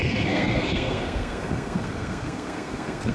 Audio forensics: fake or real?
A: fake